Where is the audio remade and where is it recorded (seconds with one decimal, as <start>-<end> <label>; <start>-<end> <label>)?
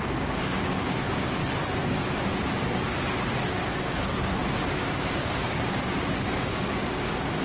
0.0-1.4 remade; 1.4-3.5 recorded; 3.5-7.4 remade